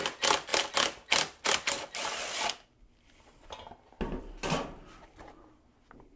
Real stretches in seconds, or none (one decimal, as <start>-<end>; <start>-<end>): 0.0-6.2